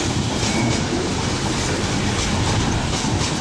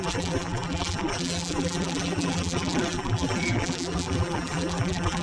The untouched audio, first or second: first